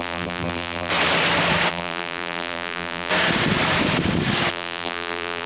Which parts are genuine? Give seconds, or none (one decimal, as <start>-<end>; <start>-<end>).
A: 0.9-1.7; 3.1-4.5